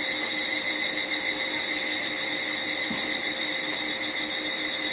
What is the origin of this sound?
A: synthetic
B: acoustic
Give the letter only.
B